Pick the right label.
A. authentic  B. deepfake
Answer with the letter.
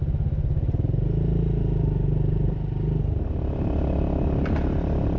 A